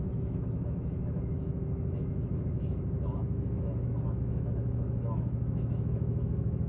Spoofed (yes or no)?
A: yes